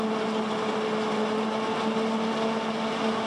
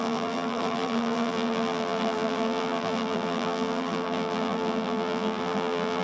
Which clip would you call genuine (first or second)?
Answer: first